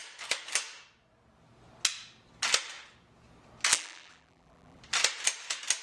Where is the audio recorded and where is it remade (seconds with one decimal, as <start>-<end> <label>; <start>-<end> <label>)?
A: 0.0-3.7 recorded; 3.7-4.8 remade; 4.8-5.8 recorded